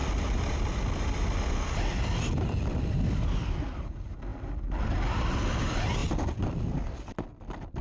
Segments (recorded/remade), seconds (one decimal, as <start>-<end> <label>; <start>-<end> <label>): 0.0-7.8 recorded